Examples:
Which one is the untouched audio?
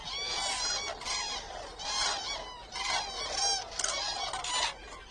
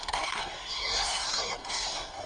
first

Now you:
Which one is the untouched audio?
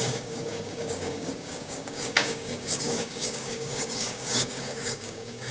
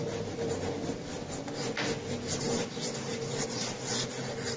second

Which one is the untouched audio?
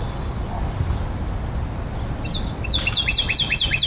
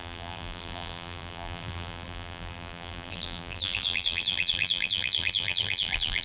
first